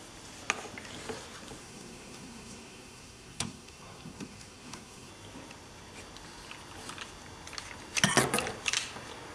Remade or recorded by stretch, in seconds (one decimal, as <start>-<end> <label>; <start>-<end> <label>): 0.0-1.6 recorded; 1.6-5.1 remade; 5.1-9.3 recorded